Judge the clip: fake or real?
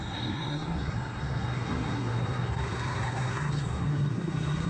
fake